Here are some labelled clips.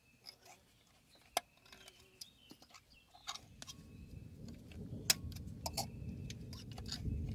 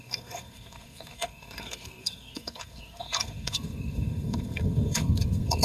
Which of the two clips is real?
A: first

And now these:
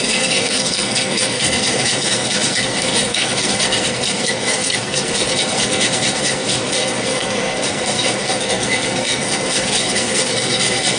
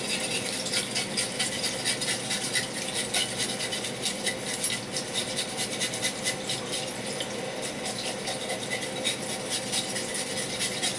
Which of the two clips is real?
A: second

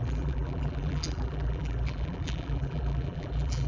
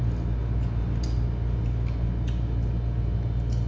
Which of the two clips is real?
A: second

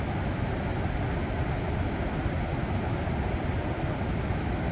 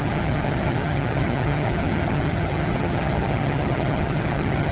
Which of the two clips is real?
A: first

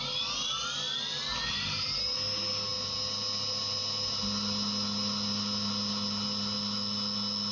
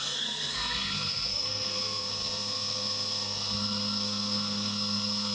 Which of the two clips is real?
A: first